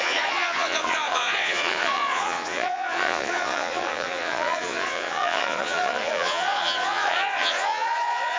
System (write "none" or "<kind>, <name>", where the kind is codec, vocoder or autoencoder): vocoder, Vocos